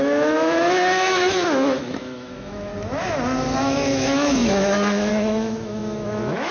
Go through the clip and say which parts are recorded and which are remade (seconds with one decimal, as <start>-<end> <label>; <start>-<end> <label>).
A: 0.0-2.7 remade; 2.7-3.6 recorded; 3.6-6.5 remade